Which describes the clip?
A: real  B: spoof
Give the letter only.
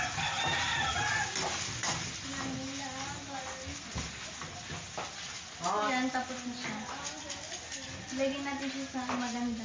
A